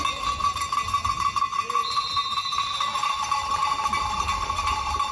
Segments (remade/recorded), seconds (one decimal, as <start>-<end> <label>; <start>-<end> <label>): 0.0-0.4 recorded; 0.4-1.1 remade; 1.1-1.8 recorded; 1.8-5.1 remade